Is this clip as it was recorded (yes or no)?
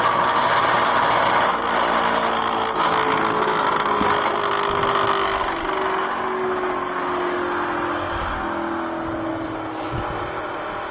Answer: yes